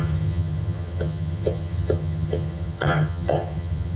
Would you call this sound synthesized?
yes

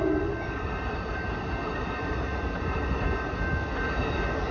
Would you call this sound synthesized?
no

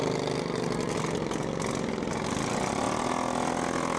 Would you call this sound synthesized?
no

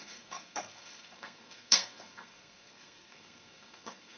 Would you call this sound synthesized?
yes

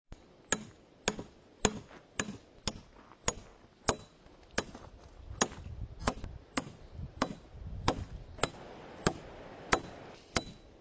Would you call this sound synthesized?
no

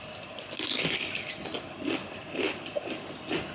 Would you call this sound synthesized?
no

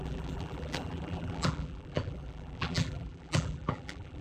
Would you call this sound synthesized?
yes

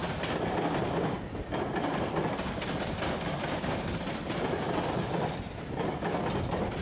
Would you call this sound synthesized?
no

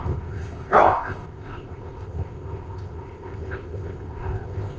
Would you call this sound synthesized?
yes